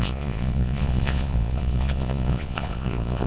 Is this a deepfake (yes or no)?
yes